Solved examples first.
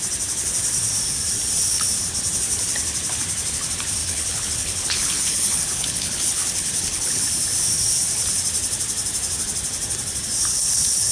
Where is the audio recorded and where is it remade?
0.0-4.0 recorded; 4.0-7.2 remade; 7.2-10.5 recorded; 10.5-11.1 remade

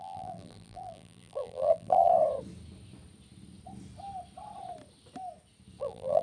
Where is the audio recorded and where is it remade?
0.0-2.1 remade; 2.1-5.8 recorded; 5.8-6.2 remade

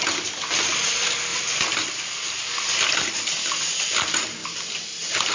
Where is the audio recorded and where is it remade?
0.0-1.3 recorded; 1.3-2.2 remade; 2.2-4.4 recorded; 4.4-5.3 remade

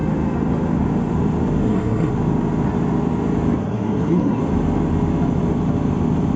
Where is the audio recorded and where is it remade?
0.0-1.6 recorded; 1.6-2.1 remade; 2.1-3.6 recorded; 3.6-4.4 remade; 4.4-6.4 recorded

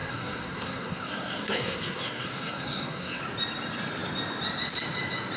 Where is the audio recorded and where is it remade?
0.0-3.2 remade; 3.2-5.4 recorded